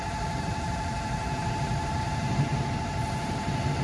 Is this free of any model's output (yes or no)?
yes